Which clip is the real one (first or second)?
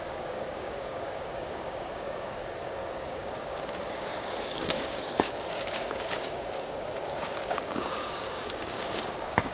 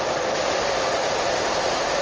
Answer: second